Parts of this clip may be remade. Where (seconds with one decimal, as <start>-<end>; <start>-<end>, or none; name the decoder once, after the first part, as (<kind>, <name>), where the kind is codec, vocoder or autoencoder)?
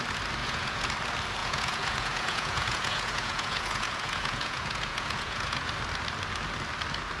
0.4-0.9 (vocoder, Vocos); 1.4-5.7